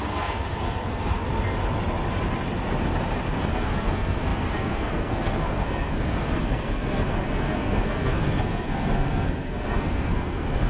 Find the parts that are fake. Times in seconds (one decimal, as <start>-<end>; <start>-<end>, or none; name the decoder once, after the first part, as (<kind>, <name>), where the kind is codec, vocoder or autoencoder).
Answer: 0.0-1.2 (codec, SNAC); 3.5-10.7